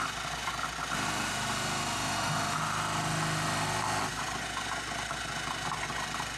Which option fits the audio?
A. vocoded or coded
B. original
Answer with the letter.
B